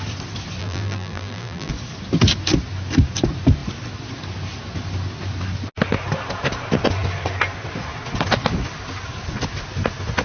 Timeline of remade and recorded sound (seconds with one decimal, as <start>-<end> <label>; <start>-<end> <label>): 0.0-0.6 recorded; 0.6-1.7 remade; 1.7-10.2 recorded